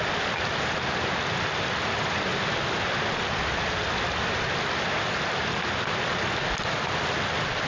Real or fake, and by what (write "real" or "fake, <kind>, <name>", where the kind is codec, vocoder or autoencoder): real